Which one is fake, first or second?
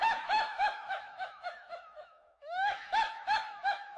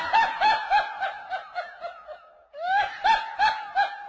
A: first